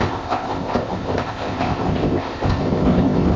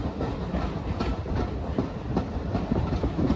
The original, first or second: second